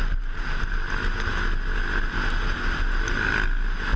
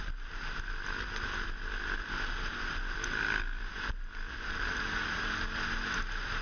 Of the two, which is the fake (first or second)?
second